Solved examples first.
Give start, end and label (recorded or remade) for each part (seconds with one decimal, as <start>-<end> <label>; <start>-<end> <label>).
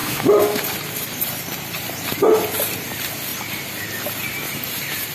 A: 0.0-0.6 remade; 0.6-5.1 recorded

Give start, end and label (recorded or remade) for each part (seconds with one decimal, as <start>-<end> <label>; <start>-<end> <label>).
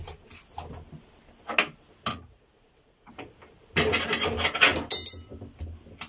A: 0.0-2.1 recorded; 2.1-3.1 remade; 3.1-6.1 recorded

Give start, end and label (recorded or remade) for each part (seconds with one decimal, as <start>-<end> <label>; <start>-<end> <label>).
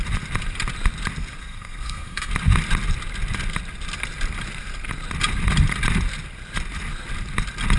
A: 0.0-1.4 recorded; 1.4-2.3 remade; 2.3-7.8 recorded